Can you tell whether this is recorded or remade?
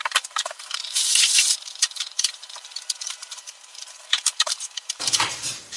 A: remade